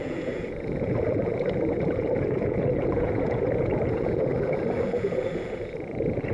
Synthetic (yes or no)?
yes